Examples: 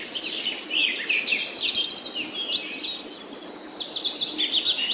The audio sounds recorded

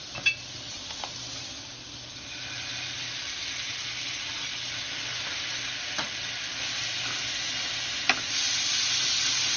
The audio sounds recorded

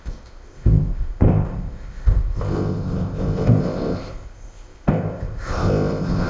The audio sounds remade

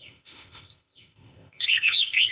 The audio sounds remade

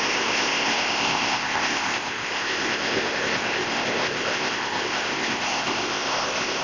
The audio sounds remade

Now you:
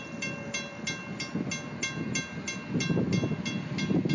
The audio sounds recorded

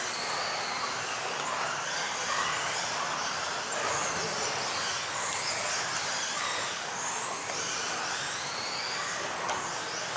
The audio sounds recorded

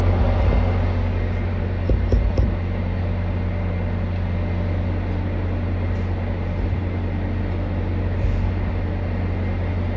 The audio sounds recorded